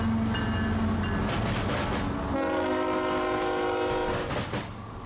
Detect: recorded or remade recorded